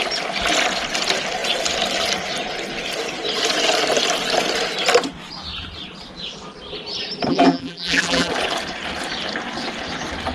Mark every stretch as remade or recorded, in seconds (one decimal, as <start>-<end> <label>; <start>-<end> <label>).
0.0-7.3 recorded; 7.3-8.3 remade; 8.3-10.3 recorded